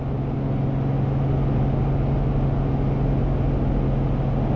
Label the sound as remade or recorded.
recorded